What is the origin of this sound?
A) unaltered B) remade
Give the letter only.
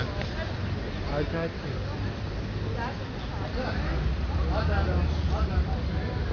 A